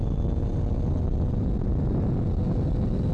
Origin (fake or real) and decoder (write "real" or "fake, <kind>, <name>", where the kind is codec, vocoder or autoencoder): real